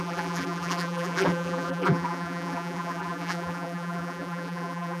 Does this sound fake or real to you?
fake